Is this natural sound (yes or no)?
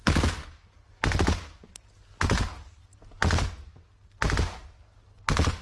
yes